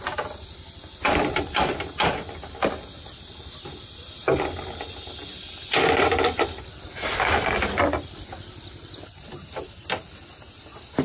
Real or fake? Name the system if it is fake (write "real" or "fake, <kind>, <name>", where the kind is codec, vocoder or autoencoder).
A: real